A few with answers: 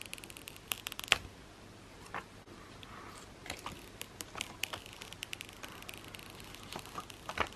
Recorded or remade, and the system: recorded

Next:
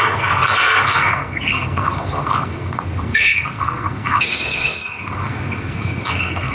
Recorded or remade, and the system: remade, codec, SNAC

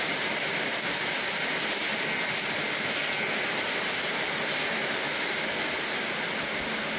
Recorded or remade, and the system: recorded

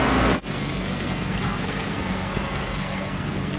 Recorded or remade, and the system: remade, codec, SNAC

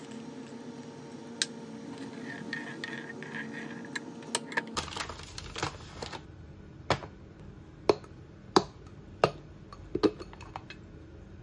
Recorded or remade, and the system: recorded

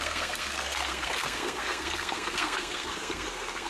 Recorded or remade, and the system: remade, codec, SNAC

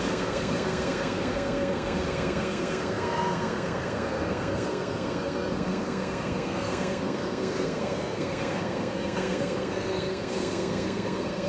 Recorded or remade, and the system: remade, codec, SNAC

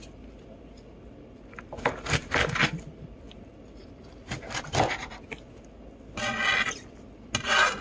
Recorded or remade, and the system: recorded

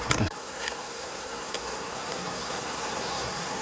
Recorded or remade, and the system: remade, codec, SNAC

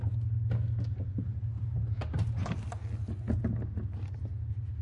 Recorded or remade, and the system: recorded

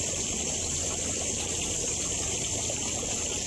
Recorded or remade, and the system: recorded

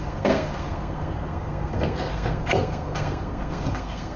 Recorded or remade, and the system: remade, codec, SNAC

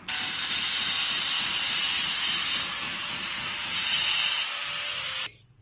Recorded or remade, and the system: recorded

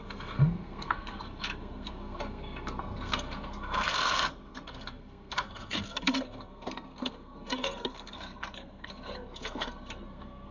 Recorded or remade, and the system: remade, codec, SNAC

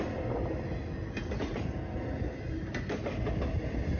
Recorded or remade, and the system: recorded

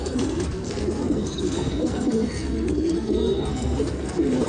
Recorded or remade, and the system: remade, codec, SNAC